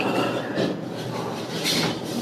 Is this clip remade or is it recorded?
remade